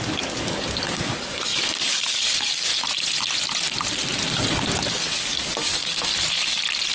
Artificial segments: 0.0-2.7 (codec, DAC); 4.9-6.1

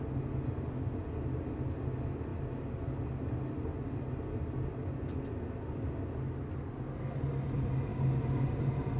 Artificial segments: 7.9-8.6 (codec, DAC)

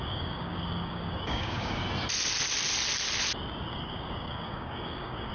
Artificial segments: 0.0-1.8 (codec, DAC); 3.7-5.3

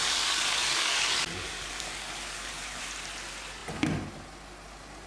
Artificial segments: 0.0-2.8 (codec, DAC)

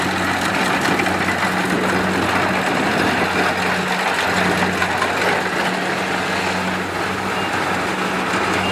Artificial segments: none

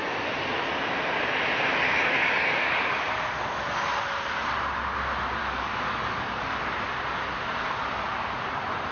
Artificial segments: 1.7-3.1 (codec, DAC); 5.4-6.6

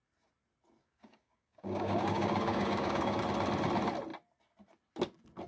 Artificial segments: 0.8-3.2 (codec, DAC)